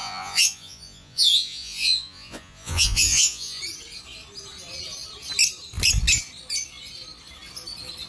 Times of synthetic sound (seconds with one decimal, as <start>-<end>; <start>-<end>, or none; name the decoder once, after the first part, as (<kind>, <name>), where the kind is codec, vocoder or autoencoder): 0.0-3.6 (vocoder, Vocos)